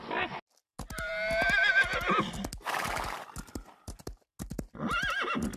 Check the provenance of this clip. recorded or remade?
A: recorded